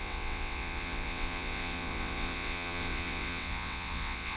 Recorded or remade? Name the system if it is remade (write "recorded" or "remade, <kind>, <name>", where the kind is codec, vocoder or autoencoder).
remade, vocoder, WaveNeXt